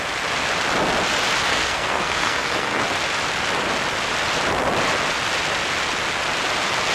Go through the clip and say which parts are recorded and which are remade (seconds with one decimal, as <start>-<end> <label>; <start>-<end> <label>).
0.0-1.5 recorded; 1.5-2.8 remade; 2.8-6.9 recorded